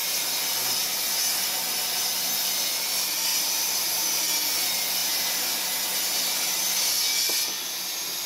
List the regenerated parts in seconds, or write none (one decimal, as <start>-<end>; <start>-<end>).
3.3-4.2